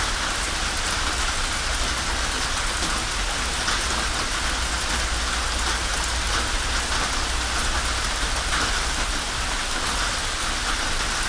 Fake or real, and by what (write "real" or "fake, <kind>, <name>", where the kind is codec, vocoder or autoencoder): real